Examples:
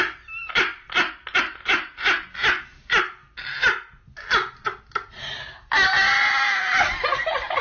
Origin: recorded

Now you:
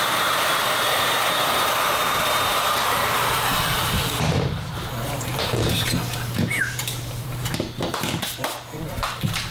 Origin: remade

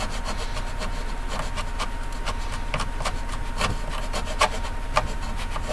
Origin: recorded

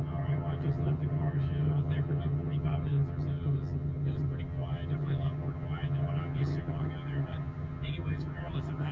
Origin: remade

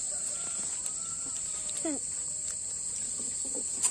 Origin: recorded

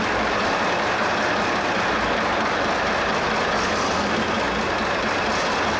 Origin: recorded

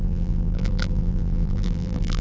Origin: remade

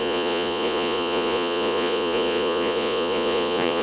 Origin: remade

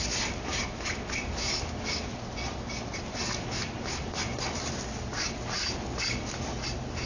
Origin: recorded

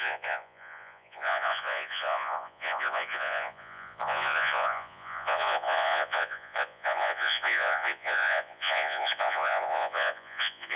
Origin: remade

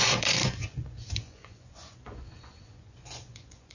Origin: remade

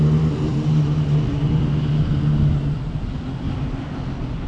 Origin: recorded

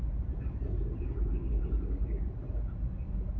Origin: recorded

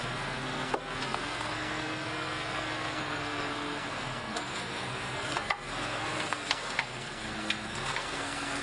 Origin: remade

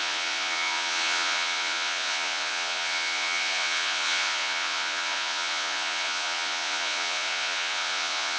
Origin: remade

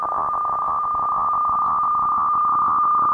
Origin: recorded